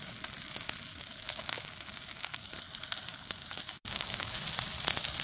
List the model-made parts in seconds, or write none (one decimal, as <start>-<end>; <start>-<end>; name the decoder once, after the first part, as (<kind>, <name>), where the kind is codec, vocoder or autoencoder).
0.9-2.5 (codec, DAC); 3.1-4.4